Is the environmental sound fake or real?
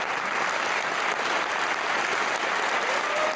fake